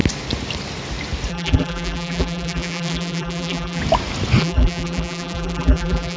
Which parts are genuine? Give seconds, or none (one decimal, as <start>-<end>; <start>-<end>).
0.0-1.3; 3.8-4.4